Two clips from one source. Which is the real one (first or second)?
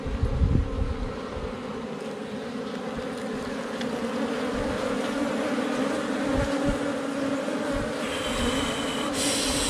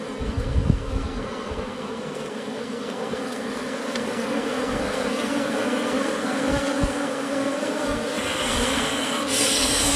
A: first